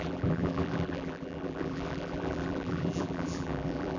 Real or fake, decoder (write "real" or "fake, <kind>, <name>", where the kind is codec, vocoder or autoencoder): fake, vocoder, BigVGAN v2